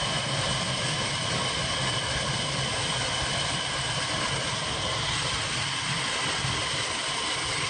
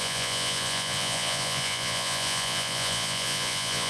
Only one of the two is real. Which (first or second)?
first